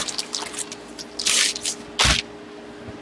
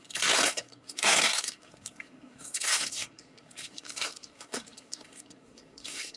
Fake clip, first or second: second